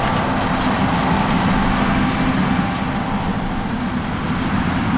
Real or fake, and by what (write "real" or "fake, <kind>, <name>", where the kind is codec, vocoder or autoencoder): real